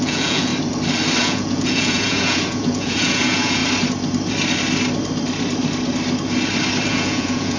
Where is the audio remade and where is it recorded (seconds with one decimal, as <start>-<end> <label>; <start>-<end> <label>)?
0.0-0.5 remade; 0.5-1.2 recorded; 1.2-3.6 remade; 3.6-6.9 recorded; 6.9-7.6 remade